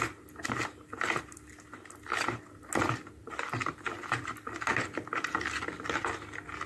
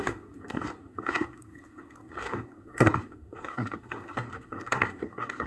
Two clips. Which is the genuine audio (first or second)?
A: first